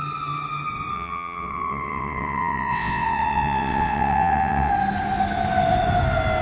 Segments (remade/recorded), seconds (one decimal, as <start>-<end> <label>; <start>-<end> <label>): 0.0-0.9 recorded; 0.9-4.7 remade; 4.7-6.4 recorded